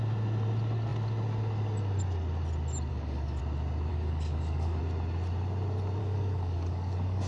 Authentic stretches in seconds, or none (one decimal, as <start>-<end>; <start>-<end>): 0.0-2.9; 3.4-3.9; 4.8-6.0